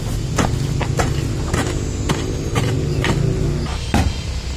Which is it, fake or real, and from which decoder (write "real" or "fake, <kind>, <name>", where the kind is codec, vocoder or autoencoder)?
real